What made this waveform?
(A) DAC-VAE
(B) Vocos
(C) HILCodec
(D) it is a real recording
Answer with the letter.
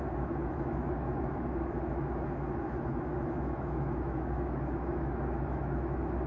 A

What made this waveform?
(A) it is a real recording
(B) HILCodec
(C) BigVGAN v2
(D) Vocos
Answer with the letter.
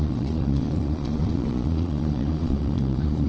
D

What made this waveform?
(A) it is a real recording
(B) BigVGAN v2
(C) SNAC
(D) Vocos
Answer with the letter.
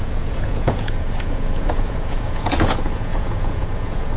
D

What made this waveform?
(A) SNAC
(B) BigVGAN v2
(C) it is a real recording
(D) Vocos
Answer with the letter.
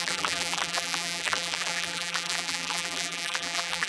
B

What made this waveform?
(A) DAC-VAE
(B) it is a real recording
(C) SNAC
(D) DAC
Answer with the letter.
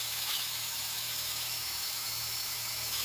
A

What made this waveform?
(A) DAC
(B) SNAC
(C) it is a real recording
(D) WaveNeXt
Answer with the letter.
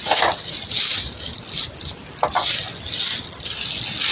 C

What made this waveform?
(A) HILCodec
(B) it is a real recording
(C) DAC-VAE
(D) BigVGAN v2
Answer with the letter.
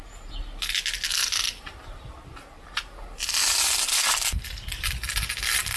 B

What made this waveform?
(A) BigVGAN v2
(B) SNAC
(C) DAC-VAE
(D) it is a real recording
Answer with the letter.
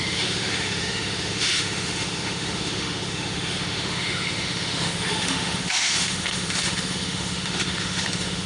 C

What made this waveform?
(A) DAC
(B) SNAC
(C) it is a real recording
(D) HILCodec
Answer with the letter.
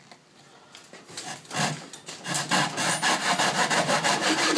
C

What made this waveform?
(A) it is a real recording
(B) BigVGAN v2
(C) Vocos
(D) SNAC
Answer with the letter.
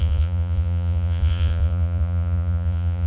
C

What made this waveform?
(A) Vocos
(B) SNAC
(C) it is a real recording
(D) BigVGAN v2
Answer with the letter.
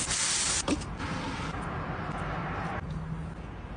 C